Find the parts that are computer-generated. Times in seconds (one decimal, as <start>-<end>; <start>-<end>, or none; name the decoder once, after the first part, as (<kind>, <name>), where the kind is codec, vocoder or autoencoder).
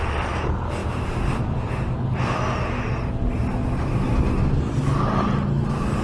none